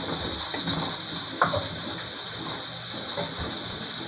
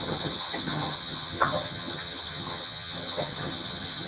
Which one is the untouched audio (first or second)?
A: first